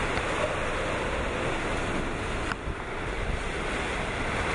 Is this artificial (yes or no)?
no